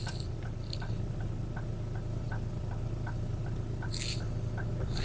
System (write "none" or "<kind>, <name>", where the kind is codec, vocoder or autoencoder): none